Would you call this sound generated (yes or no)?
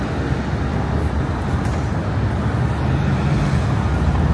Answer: no